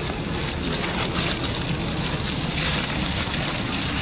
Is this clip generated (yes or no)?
no